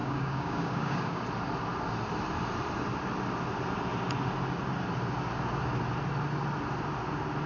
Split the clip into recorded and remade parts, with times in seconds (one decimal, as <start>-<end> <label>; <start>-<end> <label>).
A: 0.0-1.2 remade; 1.2-7.5 recorded